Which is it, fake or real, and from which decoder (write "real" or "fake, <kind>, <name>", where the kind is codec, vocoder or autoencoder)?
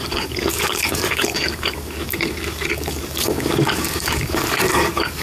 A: fake, codec, DAC